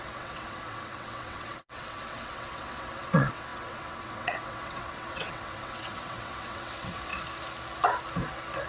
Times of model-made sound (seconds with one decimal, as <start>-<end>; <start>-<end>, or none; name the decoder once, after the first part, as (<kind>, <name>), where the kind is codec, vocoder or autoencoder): 0.0-7.1 (vocoder, WaveNeXt)